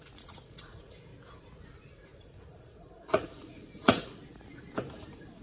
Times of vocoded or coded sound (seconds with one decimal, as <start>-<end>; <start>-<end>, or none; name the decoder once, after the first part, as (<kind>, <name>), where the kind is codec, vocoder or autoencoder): 0.0-1.1 (vocoder, Vocos); 1.9-4.2; 5.0-5.4